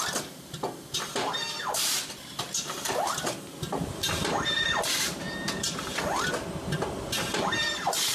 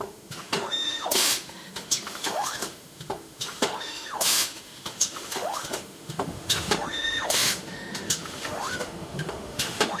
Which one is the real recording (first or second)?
first